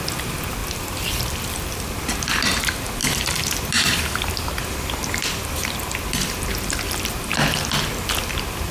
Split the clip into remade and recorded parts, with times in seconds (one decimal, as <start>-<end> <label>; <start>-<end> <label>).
0.0-0.6 recorded; 0.6-2.6 remade; 2.6-3.0 recorded; 3.0-4.2 remade; 4.2-8.7 recorded